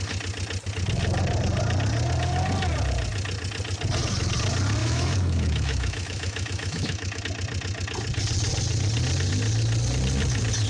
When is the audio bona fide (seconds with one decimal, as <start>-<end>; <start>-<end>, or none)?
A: 0.0-4.8; 7.2-10.7